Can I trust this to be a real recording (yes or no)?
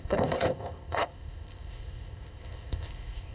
no